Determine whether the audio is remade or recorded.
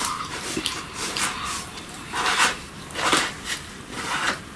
remade